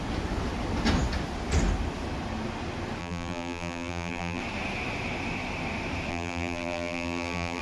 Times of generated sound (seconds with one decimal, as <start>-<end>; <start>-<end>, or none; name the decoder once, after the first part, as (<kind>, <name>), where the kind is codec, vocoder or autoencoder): 3.0-4.4 (vocoder, BigVGAN v2); 6.1-7.6